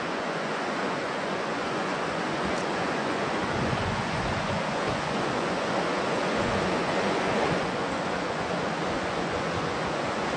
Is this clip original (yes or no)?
no